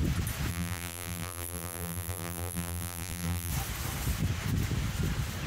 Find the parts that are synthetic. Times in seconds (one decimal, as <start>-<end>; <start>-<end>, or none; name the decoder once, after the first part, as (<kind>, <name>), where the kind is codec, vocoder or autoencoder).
0.5-3.5 (vocoder, BigVGAN v2)